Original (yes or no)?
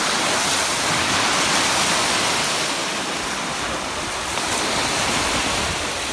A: yes